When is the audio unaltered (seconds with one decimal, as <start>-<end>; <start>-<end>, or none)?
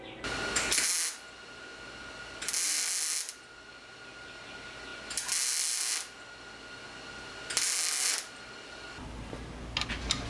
0.0-10.3